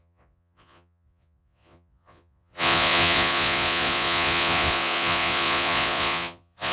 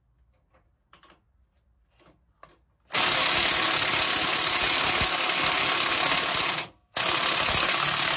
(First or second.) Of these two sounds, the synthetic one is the first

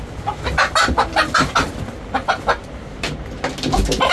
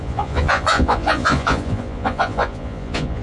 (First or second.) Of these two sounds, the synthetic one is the second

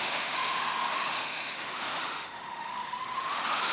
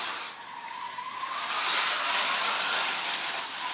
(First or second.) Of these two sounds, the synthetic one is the first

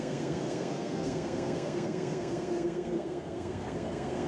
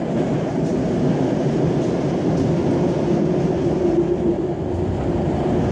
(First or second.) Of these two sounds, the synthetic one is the first